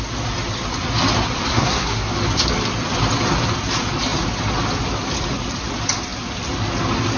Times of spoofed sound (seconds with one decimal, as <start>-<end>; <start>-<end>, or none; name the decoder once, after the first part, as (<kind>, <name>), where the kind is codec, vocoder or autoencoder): 1.5-2.1 (codec, SNAC)